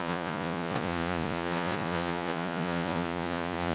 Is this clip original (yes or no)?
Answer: no